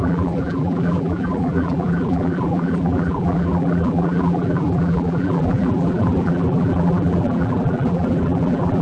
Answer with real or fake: fake